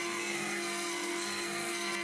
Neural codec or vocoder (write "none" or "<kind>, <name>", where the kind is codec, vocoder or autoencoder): codec, SNAC